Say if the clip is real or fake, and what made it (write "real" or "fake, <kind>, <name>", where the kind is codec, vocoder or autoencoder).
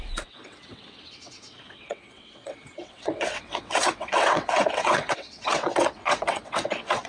fake, vocoder, WaveNeXt